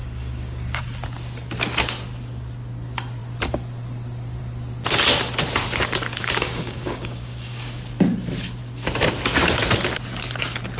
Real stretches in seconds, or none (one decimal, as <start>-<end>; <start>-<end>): 0.8-6.1; 7.8-10.8